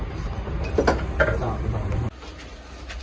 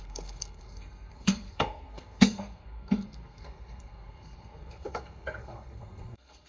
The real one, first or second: first